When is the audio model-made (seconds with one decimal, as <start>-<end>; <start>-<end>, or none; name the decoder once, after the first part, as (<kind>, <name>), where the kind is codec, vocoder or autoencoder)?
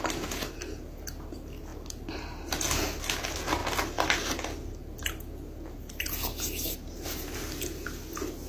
none